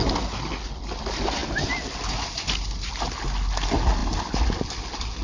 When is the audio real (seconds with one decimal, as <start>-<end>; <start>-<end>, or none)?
0.0-5.2